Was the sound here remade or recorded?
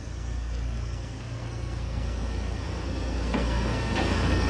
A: remade